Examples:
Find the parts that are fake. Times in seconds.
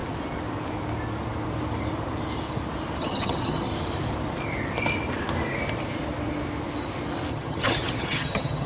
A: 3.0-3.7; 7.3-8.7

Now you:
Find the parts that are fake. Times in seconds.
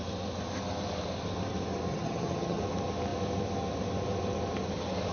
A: 1.9-2.6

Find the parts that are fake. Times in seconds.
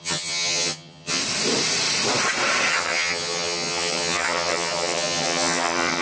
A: 0.0-1.2; 2.7-6.0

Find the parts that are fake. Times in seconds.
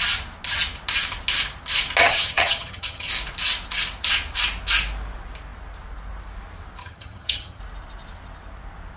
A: 2.0-3.1; 6.8-7.6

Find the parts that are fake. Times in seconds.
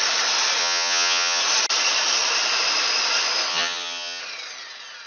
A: 0.6-1.4; 3.5-4.2